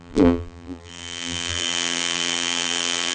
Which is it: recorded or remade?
remade